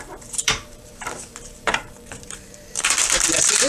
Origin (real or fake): fake